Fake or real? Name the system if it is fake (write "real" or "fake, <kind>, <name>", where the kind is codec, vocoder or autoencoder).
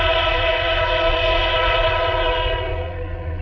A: fake, vocoder, Vocos